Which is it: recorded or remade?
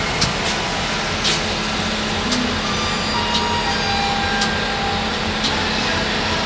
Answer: recorded